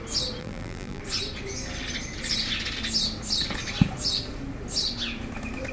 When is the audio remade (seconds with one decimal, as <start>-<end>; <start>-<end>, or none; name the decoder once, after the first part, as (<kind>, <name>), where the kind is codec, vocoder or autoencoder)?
0.4-1.0 (vocoder, BigVGAN v2)